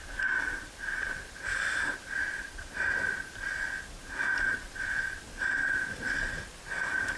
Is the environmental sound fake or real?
real